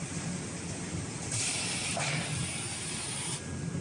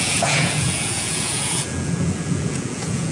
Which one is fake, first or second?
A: second